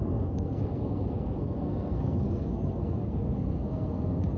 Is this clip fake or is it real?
fake